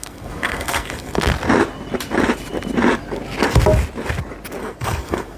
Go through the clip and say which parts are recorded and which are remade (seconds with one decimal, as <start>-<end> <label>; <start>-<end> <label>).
0.0-1.3 remade; 1.3-4.6 recorded; 4.6-5.4 remade